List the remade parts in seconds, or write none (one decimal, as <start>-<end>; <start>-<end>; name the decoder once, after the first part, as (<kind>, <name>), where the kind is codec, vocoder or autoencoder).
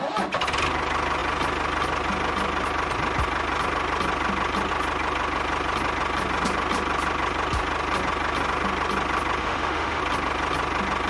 9.4-10.0 (autoencoder, DAC-VAE)